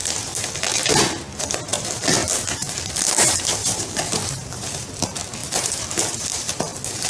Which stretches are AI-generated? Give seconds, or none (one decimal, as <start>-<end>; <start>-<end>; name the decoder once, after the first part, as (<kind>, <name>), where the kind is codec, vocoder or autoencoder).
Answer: 2.6-4.8 (vocoder, BigVGAN v2); 5.4-6.6